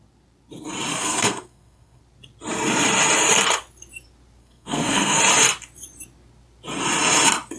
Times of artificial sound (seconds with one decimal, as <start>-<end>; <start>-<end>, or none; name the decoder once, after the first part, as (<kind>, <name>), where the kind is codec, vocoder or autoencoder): 0.9-2.0 (codec, SNAC); 4.4-5.2